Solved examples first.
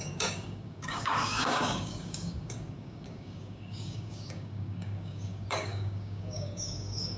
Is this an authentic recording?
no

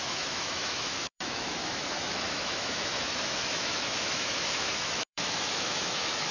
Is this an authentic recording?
no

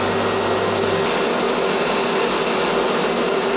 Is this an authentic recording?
yes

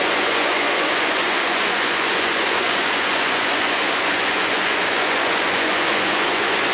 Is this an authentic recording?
no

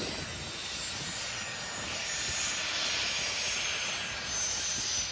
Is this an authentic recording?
yes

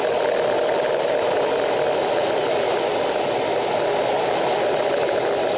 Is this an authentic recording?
yes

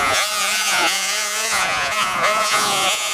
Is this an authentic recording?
no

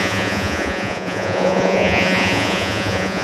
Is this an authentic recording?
no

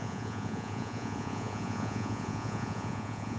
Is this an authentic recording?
no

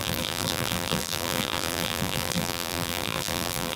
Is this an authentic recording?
no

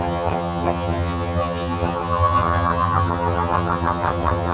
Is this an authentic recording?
no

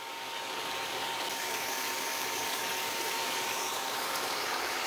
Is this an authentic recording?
no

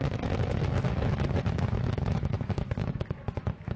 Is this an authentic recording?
no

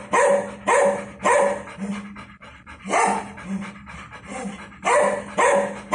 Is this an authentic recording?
yes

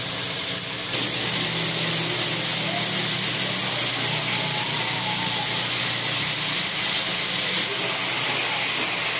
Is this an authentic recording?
yes